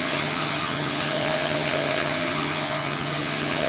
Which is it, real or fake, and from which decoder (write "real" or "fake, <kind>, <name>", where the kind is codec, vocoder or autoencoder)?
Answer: fake, vocoder, HiFi-GAN